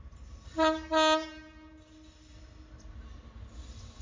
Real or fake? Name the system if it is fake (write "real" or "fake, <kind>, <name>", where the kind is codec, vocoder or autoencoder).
real